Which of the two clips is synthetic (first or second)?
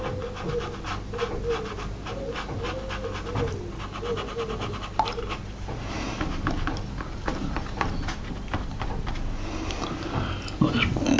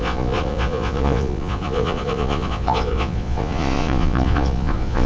second